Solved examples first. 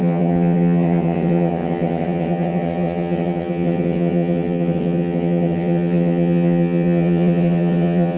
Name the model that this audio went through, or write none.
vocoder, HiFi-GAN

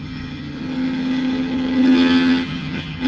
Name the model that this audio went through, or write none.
vocoder, HiFi-GAN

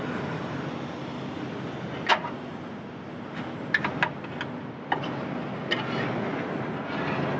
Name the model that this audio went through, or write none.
none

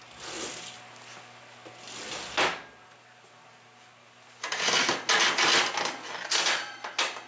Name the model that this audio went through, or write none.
none